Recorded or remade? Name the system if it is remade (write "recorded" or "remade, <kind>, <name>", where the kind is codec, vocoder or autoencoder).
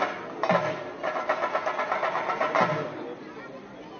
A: recorded